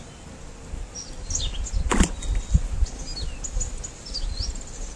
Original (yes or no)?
yes